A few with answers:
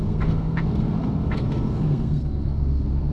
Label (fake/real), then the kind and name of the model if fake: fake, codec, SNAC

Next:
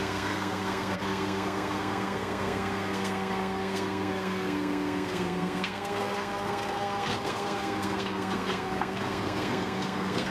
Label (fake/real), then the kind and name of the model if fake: fake, codec, SNAC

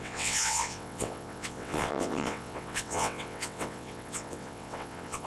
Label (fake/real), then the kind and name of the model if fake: fake, vocoder, WaveNeXt